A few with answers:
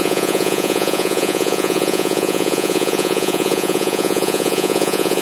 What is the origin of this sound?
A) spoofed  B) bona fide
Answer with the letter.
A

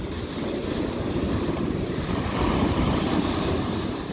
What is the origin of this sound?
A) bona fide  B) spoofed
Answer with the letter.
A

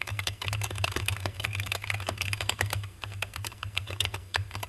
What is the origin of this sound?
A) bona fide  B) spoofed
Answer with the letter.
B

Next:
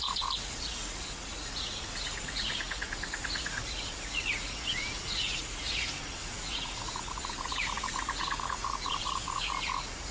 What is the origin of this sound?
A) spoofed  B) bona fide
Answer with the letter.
A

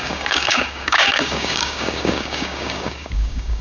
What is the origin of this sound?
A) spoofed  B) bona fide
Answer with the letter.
A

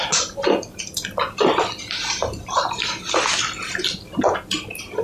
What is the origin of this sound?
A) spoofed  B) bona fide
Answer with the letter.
B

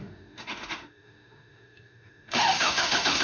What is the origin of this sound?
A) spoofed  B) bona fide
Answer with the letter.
A